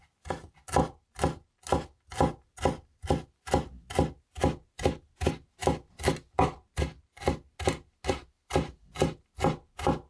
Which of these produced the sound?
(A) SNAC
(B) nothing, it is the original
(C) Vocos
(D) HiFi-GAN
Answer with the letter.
B